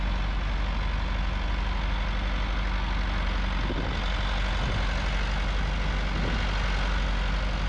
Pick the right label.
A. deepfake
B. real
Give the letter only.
B